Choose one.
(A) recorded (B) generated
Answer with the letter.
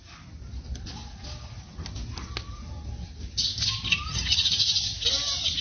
A